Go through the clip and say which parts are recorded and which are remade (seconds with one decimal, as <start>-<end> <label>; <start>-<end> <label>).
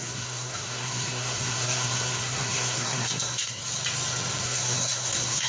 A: 0.0-3.6 remade; 3.6-4.4 recorded; 4.4-5.5 remade